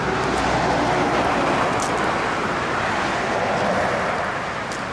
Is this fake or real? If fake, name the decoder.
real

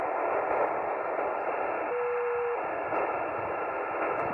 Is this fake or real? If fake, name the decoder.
real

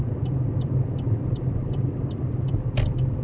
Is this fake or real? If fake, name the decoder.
real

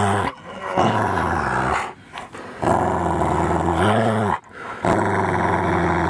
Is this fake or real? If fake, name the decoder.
real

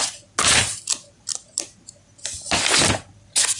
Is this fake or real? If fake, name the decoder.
real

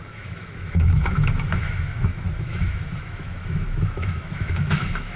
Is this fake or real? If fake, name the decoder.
fake, autoencoder, DAC-VAE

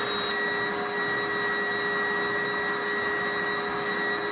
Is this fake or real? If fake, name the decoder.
real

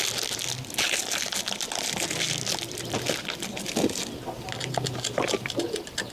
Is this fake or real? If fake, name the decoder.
real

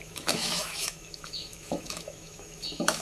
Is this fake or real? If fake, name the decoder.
fake, autoencoder, DAC-VAE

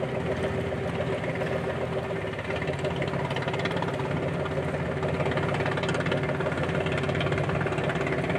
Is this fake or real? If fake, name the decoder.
real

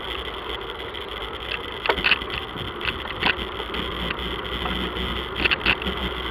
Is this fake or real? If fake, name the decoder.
real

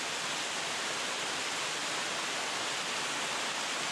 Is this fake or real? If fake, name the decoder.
real